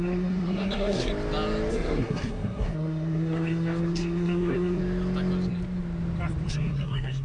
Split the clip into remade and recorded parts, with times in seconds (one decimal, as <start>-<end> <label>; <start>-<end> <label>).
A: 0.0-1.1 remade; 1.1-1.7 recorded; 1.7-4.8 remade; 4.8-6.5 recorded; 6.5-7.2 remade